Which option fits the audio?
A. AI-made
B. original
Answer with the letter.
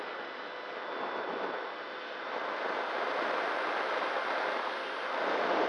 B